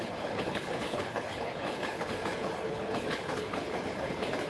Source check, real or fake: fake